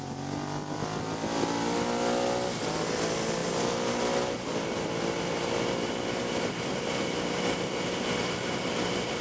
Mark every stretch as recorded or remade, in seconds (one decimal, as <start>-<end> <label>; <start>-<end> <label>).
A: 0.0-3.4 recorded; 3.4-4.0 remade; 4.0-9.2 recorded